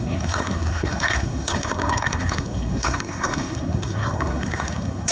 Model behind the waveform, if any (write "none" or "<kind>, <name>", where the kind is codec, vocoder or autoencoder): codec, SNAC